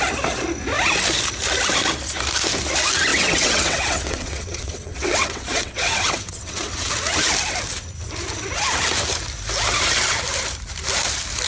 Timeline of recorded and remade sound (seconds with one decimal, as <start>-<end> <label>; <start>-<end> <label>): 0.0-3.1 recorded; 3.1-6.9 remade; 6.9-11.5 recorded